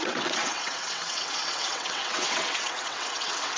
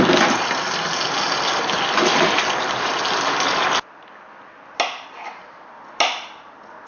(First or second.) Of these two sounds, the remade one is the first